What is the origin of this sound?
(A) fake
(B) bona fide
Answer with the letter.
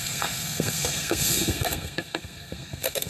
A